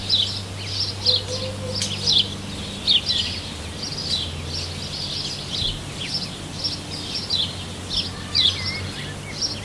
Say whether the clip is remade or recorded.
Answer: recorded